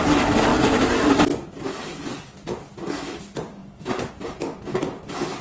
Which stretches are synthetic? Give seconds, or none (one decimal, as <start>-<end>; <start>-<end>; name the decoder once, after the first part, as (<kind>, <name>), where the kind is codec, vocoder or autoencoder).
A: 0.5-3.2 (vocoder, BigVGAN v2); 3.6-4.1